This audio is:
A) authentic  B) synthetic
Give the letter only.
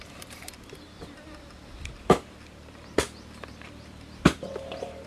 B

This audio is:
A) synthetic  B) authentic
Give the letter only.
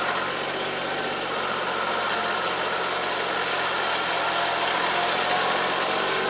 B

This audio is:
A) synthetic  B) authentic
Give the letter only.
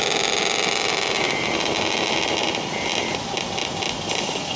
B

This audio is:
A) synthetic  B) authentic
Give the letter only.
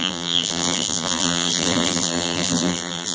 A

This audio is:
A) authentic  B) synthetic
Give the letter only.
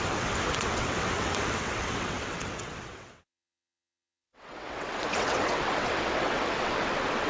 B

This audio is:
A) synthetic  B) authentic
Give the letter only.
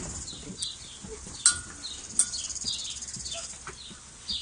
B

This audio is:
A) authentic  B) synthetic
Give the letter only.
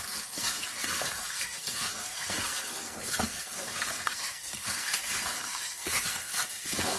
B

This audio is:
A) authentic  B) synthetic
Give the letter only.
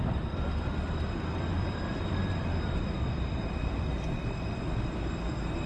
B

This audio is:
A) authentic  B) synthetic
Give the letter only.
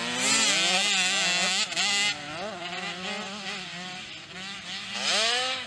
A